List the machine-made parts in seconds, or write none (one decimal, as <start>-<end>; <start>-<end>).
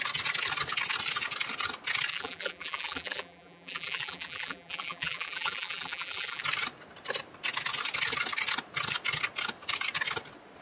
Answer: 2.1-6.4